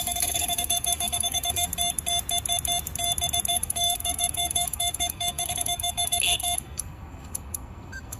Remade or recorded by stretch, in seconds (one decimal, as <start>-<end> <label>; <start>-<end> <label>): 0.0-1.7 remade; 1.7-3.5 recorded; 3.5-8.2 remade